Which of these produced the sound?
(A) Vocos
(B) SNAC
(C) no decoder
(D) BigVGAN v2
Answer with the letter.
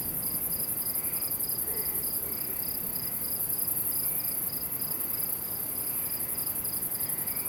C